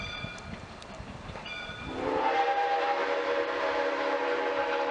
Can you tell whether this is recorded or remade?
recorded